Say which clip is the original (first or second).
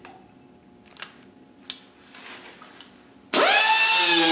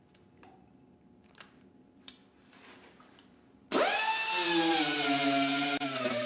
first